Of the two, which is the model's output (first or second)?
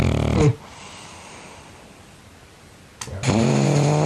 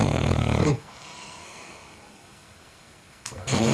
second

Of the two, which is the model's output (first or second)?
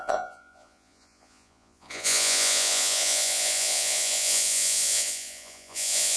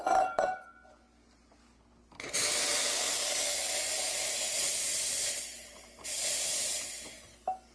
first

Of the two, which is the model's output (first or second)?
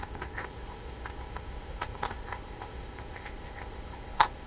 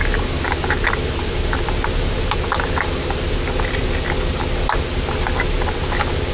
first